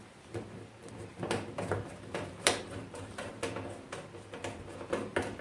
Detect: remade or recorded recorded